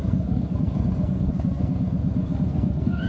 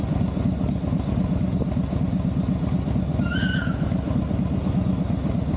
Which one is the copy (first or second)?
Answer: first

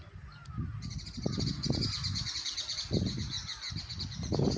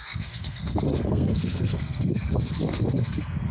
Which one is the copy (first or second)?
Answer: second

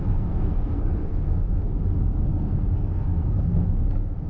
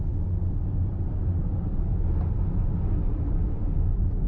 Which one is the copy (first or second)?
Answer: first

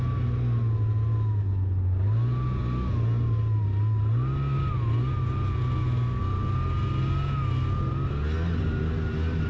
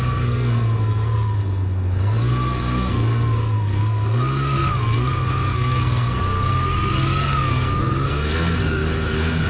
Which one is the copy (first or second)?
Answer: second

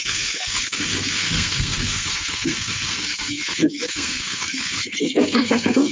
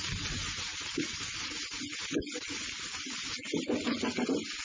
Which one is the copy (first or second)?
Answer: first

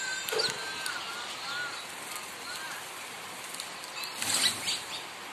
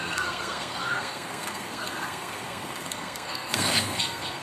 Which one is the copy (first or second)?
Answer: second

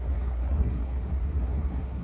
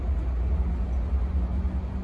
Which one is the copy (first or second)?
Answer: first